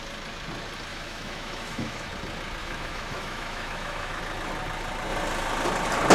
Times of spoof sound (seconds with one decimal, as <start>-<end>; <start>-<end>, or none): 0.9-2.1; 2.6-4.2